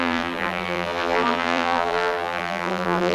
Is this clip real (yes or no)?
no